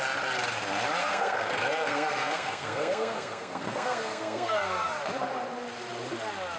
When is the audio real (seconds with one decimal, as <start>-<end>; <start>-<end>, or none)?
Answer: 0.0-1.0; 5.0-6.6